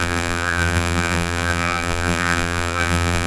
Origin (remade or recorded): remade